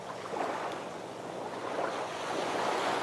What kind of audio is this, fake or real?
fake